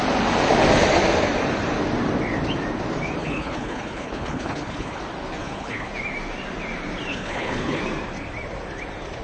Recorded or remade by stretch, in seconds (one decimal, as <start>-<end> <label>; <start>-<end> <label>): 0.0-3.2 recorded; 3.2-5.0 remade; 5.0-5.4 recorded; 5.4-5.9 remade; 5.9-7.1 recorded; 7.1-7.8 remade; 7.8-9.2 recorded